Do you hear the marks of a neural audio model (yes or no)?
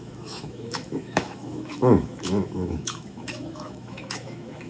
yes